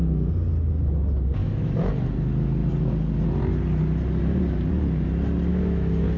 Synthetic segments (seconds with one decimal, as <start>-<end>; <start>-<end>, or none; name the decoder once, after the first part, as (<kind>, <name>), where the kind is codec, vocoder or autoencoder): 1.4-1.9 (autoencoder, DAC-VAE); 5.5-6.2